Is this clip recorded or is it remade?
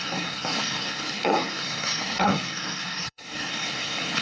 remade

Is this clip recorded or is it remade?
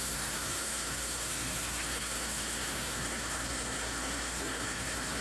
remade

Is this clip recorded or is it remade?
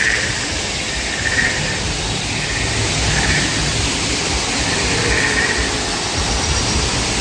recorded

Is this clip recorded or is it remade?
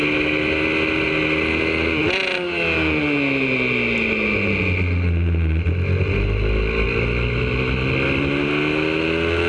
recorded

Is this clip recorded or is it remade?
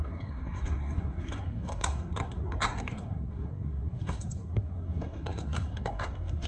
remade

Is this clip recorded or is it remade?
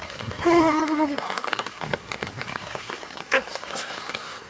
remade